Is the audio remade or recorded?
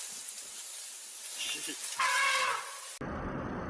recorded